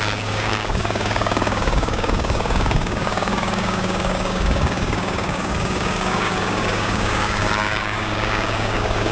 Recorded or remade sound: remade